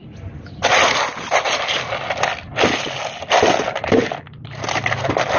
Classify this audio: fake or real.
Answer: real